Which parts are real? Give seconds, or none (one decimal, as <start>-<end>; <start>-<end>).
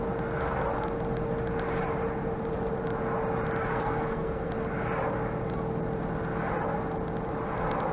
0.0-3.7; 4.5-7.9